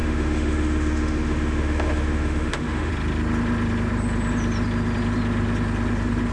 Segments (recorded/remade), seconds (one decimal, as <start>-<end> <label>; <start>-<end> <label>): 0.0-2.9 remade; 2.9-6.3 recorded